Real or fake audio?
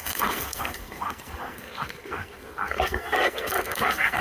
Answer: fake